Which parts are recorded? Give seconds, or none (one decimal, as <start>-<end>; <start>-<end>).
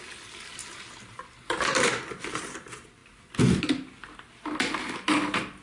0.6-1.6; 3.0-4.8